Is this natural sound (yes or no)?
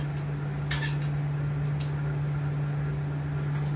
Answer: yes